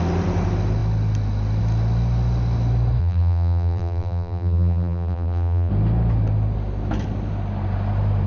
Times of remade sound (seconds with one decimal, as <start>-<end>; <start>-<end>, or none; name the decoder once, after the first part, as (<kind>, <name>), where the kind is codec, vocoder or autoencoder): 3.0-5.7 (vocoder, BigVGAN v2)